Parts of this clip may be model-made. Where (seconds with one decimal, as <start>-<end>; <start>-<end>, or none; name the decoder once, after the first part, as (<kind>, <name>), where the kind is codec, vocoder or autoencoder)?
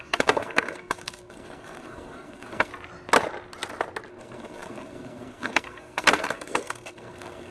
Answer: 0.0-2.7 (codec, SNAC); 4.1-7.5